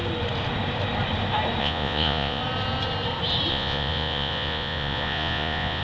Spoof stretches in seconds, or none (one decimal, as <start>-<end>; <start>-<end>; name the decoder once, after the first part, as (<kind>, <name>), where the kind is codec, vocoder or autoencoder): 1.6-2.4 (vocoder, Vocos); 3.5-5.8